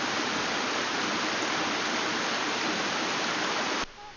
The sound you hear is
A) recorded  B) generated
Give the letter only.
A